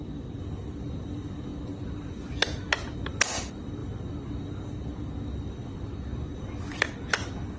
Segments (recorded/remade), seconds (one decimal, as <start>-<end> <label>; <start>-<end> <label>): 0.0-7.6 recorded